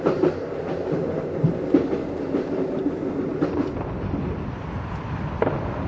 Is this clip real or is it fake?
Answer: real